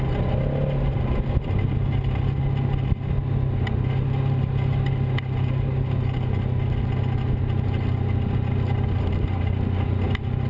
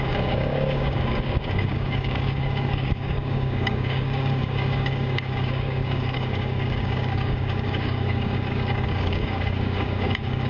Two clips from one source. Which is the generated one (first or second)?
second